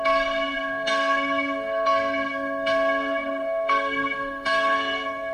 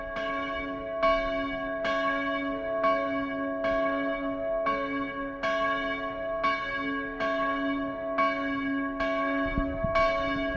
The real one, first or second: second